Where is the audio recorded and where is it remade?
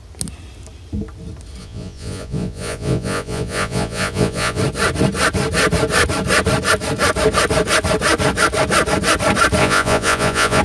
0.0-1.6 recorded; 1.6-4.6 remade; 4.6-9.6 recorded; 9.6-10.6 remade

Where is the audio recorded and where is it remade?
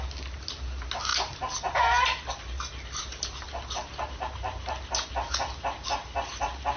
0.0-6.8 recorded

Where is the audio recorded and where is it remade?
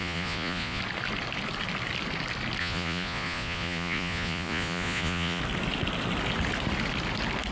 0.0-0.8 remade; 0.8-2.6 recorded; 2.6-5.4 remade; 5.4-7.5 recorded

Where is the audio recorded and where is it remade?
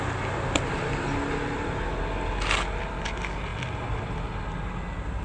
0.0-5.2 recorded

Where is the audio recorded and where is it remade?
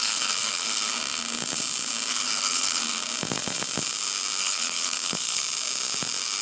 0.0-0.9 remade; 0.9-2.1 recorded; 2.1-2.8 remade; 2.8-4.4 recorded; 4.4-5.4 remade; 5.4-6.4 recorded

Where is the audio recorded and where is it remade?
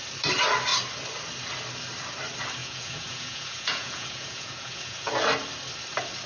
0.0-2.6 recorded; 2.6-5.1 remade; 5.1-6.3 recorded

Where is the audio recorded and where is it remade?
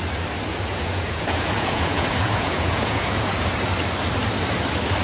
0.0-0.5 recorded; 0.5-3.5 remade; 3.5-5.0 recorded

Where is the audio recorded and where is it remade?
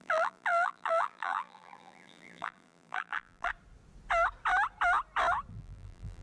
0.0-3.5 remade; 3.5-5.5 recorded; 5.5-6.2 remade